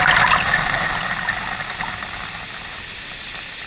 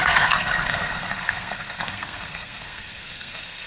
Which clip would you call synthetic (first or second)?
second